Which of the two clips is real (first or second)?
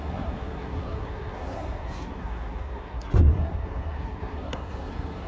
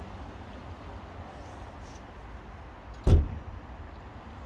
second